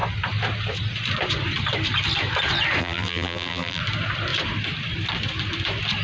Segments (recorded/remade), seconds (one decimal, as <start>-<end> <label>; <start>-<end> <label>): 0.0-2.8 recorded; 2.8-3.8 remade; 3.8-6.0 recorded